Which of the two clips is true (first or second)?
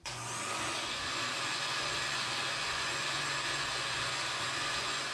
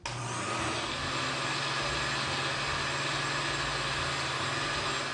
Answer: second